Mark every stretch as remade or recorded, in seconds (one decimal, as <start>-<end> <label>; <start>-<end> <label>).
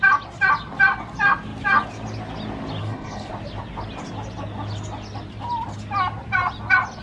0.0-2.8 recorded; 2.8-3.3 remade; 3.3-7.0 recorded